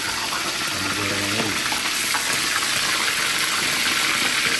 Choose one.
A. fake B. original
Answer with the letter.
B